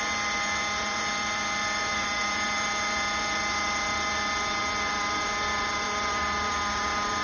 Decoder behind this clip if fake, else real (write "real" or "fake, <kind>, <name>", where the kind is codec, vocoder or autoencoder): fake, vocoder, BigVGAN v2